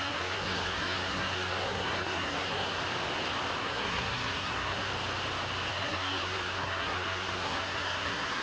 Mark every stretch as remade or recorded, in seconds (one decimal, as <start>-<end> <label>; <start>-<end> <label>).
0.0-2.8 remade; 2.8-3.6 recorded; 3.6-4.9 remade; 4.9-5.7 recorded; 5.7-8.4 remade